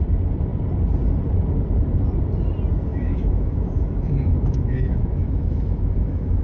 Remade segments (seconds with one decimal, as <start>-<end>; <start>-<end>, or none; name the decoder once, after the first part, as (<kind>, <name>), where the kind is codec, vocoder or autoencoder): 2.9-6.4 (autoencoder, DAC-VAE)